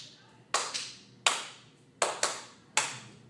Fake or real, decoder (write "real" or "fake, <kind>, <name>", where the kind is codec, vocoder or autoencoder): real